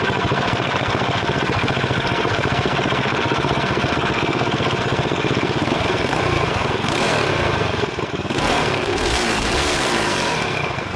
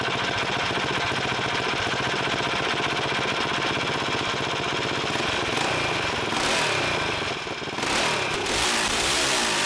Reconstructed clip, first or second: first